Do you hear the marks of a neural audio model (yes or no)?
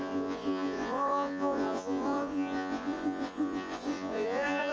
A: yes